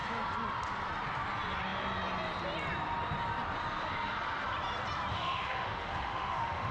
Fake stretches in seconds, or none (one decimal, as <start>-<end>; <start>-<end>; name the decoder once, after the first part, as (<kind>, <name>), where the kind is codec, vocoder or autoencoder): 5.1-6.7 (autoencoder, DAC-VAE)